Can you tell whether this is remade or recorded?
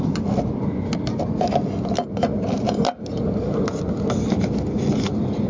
recorded